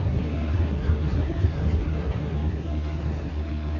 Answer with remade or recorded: remade